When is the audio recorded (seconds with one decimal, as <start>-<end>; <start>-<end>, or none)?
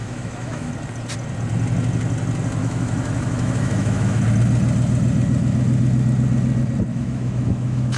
0.7-2.6; 4.2-6.9